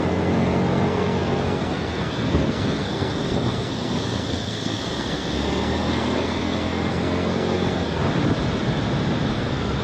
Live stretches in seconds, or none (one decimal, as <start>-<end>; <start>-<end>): 8.0-9.3